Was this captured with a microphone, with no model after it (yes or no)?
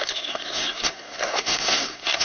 no